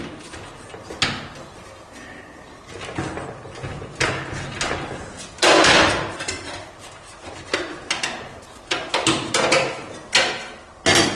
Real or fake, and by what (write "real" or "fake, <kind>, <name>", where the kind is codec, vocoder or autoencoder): real